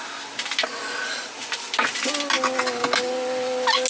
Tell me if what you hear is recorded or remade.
recorded